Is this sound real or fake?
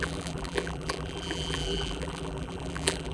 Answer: fake